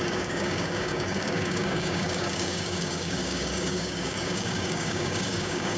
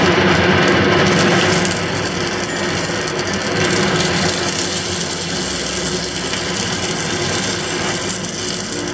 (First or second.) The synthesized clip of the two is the first